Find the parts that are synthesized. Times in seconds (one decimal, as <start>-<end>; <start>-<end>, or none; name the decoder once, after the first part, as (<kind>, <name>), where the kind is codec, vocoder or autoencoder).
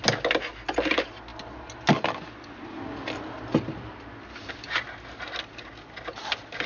none